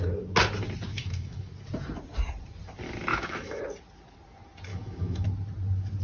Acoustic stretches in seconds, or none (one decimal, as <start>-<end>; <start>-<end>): 0.0-0.9; 1.5-3.1; 3.6-4.7; 5.3-6.0